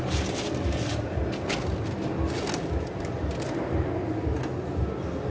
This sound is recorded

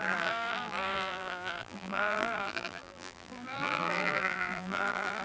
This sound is remade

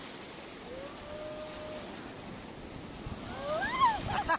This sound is recorded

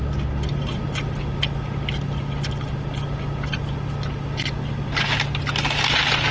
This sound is recorded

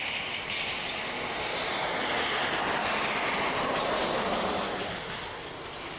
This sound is recorded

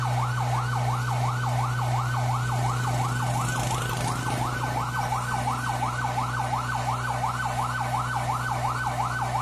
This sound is recorded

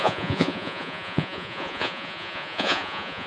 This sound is remade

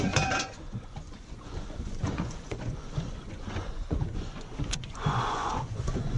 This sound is remade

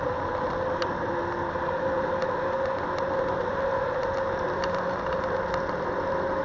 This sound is recorded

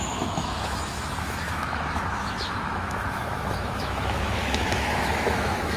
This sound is remade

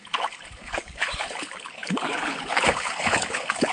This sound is remade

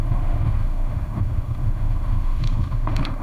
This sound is remade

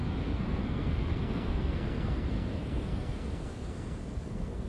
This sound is remade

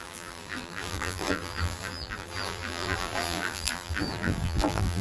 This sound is remade